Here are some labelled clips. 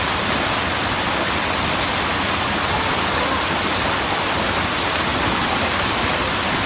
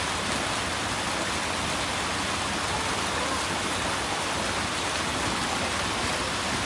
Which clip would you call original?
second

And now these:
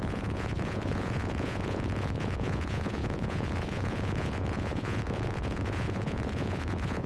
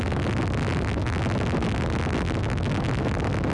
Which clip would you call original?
second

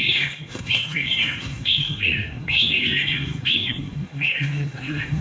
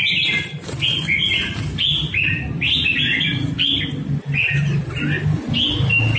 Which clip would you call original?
second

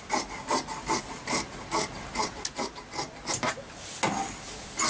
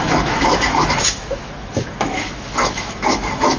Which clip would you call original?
first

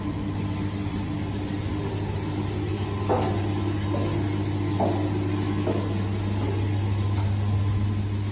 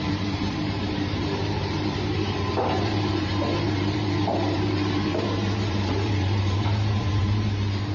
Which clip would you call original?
first